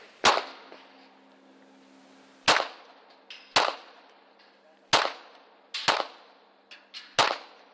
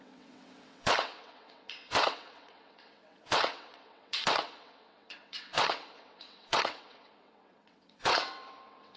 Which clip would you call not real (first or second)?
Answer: second